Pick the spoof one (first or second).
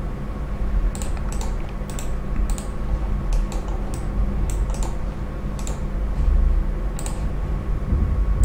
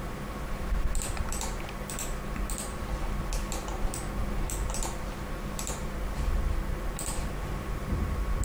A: second